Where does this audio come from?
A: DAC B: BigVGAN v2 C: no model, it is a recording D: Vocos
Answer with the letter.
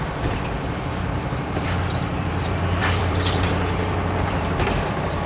B